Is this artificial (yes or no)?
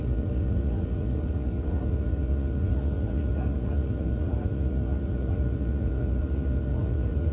yes